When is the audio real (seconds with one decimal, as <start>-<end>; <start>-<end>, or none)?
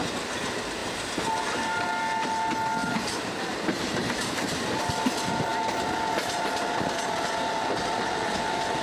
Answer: 0.0-0.8; 2.0-2.8; 4.8-8.8